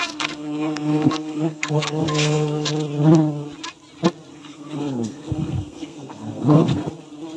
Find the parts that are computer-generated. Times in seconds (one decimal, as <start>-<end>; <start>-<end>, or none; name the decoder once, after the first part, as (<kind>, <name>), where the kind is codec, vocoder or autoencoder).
0.0-2.7 (codec, SNAC); 4.3-6.9

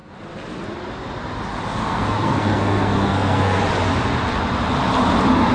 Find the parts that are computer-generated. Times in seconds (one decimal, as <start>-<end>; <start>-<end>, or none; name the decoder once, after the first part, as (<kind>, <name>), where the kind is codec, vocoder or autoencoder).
1.8-3.6 (codec, SNAC)

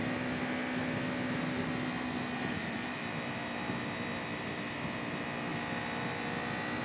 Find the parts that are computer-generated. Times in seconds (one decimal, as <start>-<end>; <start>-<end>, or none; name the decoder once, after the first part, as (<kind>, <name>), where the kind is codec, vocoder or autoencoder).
none